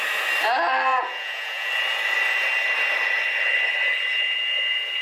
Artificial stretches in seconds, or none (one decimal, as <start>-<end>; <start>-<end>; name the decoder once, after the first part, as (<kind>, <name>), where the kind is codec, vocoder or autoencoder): 0.9-1.7 (vocoder, Vocos); 4.1-5.0